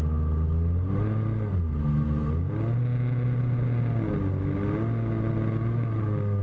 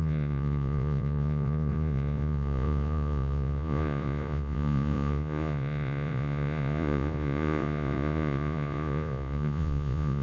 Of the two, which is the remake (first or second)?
second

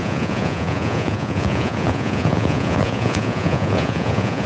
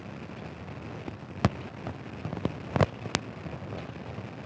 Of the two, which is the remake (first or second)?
first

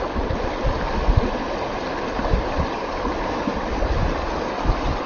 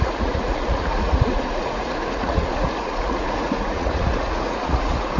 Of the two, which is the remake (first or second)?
second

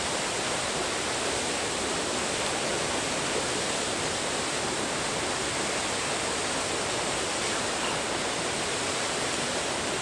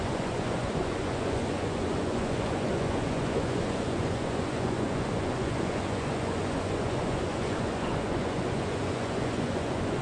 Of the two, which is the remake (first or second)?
second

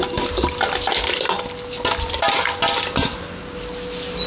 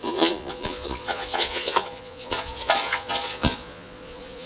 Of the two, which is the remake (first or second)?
second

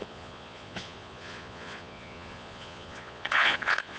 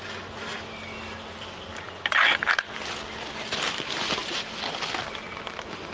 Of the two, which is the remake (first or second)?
first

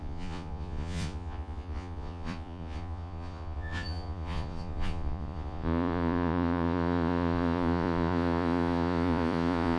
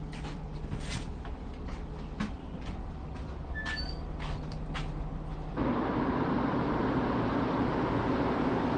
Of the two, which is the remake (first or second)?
first